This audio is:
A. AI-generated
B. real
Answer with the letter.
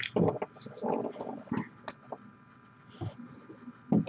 B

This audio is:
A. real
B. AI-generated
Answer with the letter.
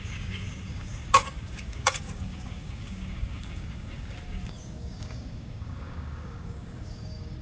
B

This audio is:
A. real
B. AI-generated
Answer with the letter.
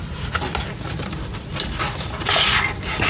A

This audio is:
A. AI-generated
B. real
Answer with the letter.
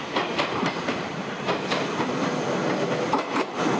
B